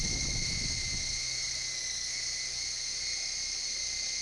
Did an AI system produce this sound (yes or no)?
no